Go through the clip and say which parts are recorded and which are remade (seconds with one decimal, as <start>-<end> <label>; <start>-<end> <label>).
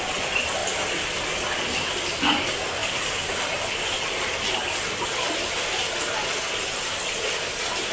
0.0-7.9 recorded